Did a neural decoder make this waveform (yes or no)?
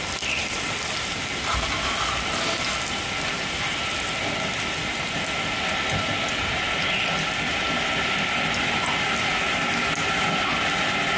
no